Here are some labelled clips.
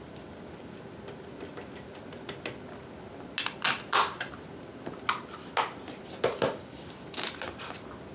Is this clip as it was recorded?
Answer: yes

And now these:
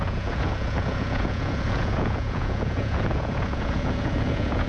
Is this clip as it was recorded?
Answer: no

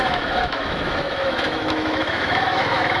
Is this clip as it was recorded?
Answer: no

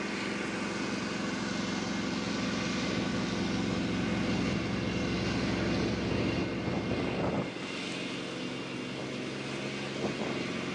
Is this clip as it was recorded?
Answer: yes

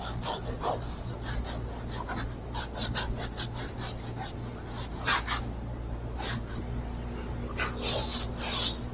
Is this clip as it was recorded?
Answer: yes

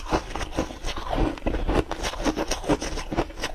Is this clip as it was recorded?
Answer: yes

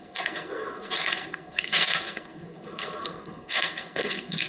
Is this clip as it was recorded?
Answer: no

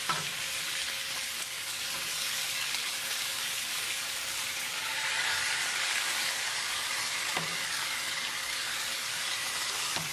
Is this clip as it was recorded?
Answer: no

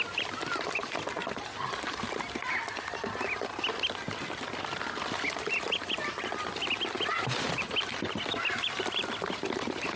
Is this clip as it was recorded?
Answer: yes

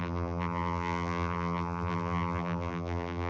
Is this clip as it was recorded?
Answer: no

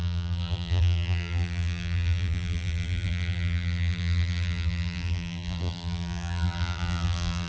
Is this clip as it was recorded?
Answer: no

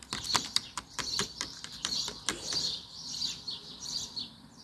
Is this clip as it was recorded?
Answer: no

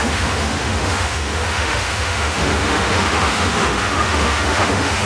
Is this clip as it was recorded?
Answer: no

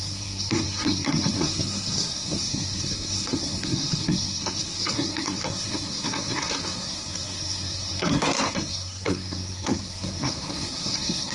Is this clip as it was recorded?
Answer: no